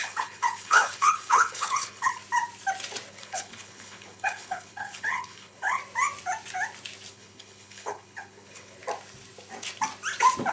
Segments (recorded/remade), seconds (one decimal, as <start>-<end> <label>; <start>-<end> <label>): 0.0-2.2 remade; 2.2-3.1 recorded; 3.1-5.8 remade; 5.8-7.1 recorded; 7.1-8.8 remade; 8.8-10.5 recorded